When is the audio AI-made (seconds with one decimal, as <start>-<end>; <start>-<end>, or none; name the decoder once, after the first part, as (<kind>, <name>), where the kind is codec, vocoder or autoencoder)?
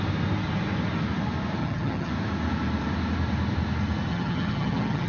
1.6-2.1 (vocoder, HiFi-GAN); 4.1-5.1